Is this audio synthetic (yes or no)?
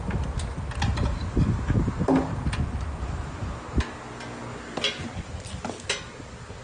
no